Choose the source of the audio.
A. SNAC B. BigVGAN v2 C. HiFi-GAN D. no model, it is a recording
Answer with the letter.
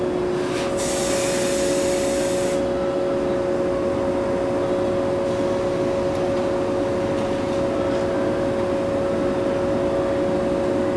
D